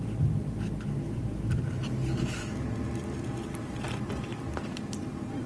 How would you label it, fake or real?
real